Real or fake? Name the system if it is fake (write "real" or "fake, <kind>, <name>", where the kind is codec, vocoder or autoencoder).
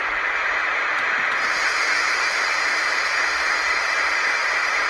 real